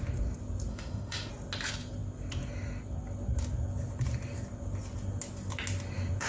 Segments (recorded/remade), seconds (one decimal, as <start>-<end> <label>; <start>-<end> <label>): 0.0-0.7 recorded; 0.7-1.3 remade; 1.3-6.3 recorded